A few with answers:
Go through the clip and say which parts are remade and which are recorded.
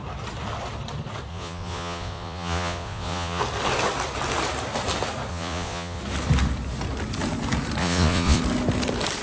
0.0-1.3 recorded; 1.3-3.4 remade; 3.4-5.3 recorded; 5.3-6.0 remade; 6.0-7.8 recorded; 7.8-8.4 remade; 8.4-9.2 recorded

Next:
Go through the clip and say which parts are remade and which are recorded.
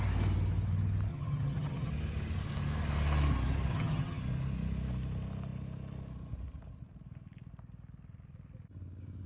0.0-1.1 recorded; 1.1-1.9 remade; 1.9-3.7 recorded; 3.7-4.2 remade; 4.2-9.3 recorded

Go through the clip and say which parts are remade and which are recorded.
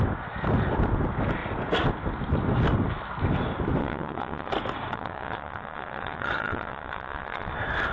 0.0-3.8 recorded; 3.8-4.5 remade; 4.5-4.9 recorded; 4.9-7.5 remade; 7.5-7.9 recorded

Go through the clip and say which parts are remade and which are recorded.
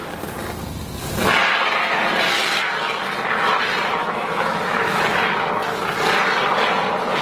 0.0-4.0 recorded; 4.0-5.0 remade; 5.0-7.2 recorded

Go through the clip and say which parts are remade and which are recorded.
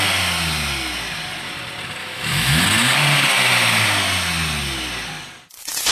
0.0-2.0 recorded; 2.0-2.6 remade; 2.6-5.9 recorded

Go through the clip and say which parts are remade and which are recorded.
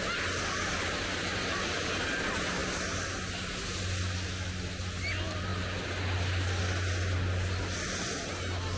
0.0-8.8 recorded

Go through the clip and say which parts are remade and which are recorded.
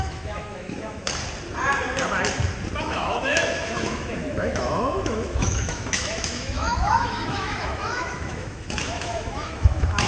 0.0-1.2 remade; 1.2-2.8 recorded; 2.8-10.1 remade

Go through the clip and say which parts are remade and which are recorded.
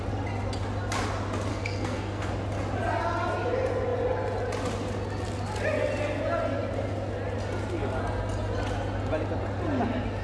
0.0-1.5 recorded; 1.5-2.3 remade; 2.3-10.2 recorded